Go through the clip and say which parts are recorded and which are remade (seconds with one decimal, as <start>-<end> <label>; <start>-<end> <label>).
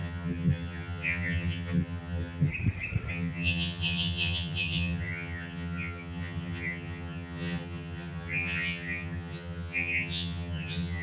0.0-2.5 remade; 2.5-3.1 recorded; 3.1-11.0 remade